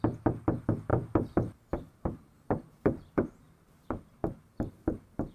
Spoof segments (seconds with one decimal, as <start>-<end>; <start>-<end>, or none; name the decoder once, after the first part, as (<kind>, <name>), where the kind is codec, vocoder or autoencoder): 0.0-5.3 (vocoder, BigVGAN v2)